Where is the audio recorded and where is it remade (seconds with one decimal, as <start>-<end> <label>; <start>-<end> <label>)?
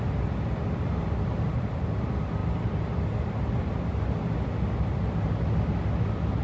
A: 0.0-6.4 recorded